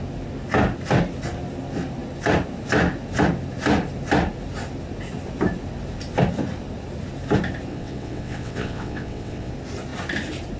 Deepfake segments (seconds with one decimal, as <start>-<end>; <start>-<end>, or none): 7.7-9.5